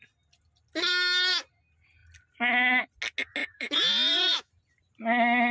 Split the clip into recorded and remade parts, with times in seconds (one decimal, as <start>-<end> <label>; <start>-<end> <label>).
0.0-3.4 recorded; 3.4-4.5 remade; 4.5-5.5 recorded